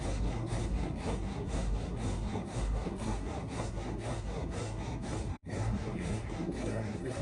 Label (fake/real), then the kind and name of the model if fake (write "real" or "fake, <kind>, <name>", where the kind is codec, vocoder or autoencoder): fake, codec, SNAC